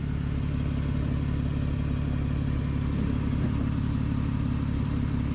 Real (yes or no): yes